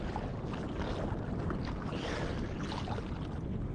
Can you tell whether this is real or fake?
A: real